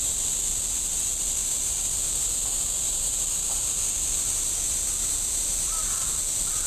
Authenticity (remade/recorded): recorded